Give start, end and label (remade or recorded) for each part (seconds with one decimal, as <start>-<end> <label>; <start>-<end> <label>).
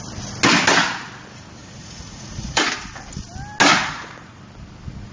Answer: 0.0-1.6 recorded; 1.6-2.7 remade; 2.7-3.7 recorded; 3.7-4.4 remade; 4.4-5.1 recorded